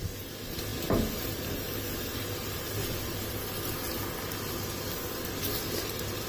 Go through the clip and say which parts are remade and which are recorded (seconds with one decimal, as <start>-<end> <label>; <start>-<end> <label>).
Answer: 0.0-6.3 recorded